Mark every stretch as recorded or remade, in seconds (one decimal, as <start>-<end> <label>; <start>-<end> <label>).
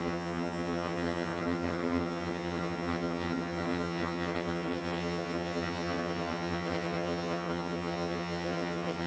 0.0-9.1 remade